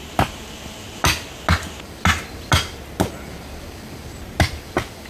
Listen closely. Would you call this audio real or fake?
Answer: real